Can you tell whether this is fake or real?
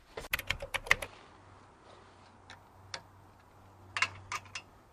real